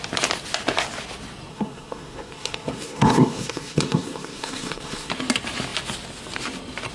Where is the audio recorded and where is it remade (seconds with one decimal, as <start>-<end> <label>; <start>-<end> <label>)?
0.0-1.5 recorded; 1.5-5.1 remade; 5.1-6.9 recorded